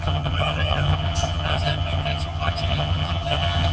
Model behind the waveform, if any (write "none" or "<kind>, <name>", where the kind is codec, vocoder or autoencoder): vocoder, HiFi-GAN